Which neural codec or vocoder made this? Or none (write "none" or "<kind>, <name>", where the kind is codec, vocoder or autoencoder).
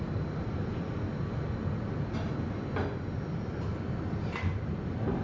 none